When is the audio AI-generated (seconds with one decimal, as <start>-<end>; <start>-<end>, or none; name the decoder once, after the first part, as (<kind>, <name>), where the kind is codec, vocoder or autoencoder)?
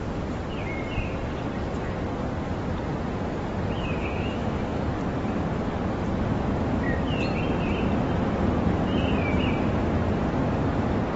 4.0-4.8 (autoencoder, DAC-VAE)